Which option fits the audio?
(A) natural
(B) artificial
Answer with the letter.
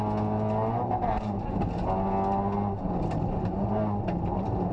A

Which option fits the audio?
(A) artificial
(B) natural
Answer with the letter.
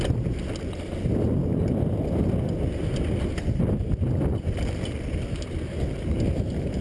B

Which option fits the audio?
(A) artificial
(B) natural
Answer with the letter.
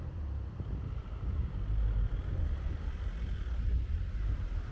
A